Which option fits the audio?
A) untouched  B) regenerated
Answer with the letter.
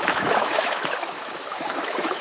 B